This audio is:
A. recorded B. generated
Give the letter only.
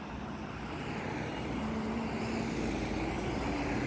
A